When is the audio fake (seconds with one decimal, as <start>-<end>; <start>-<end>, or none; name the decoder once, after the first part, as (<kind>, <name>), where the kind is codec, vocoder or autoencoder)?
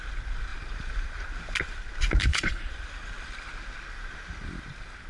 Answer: 2.2-2.7 (codec, HILCodec)